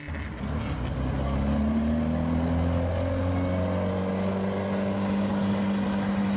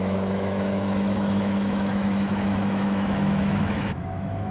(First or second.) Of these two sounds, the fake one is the second